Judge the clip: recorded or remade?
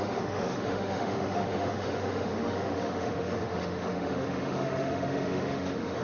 remade